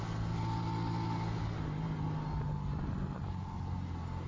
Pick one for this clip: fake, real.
real